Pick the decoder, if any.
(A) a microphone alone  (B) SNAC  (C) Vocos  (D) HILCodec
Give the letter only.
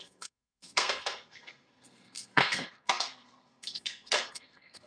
B